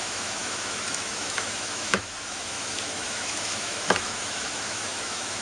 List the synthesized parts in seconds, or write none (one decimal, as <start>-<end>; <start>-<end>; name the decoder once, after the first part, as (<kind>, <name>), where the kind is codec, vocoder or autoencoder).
0.0-5.4 (autoencoder, DAC-VAE)